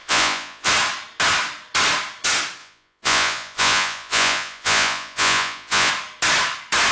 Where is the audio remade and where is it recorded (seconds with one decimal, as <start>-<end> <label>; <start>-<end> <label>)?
0.0-0.7 remade; 0.7-2.6 recorded; 2.6-5.9 remade; 5.9-6.9 recorded